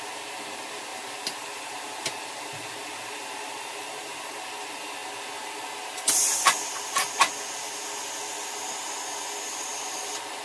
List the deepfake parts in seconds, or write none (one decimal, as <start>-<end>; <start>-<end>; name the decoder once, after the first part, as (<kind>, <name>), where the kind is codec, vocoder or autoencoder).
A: 0.9-4.3 (vocoder, BigVGAN v2)